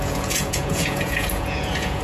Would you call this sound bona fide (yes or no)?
no